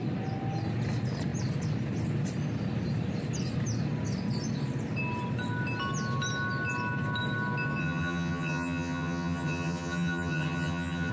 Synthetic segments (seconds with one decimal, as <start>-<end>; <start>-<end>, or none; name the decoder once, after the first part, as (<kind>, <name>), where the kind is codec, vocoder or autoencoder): 7.8-11.1 (vocoder, HiFi-GAN)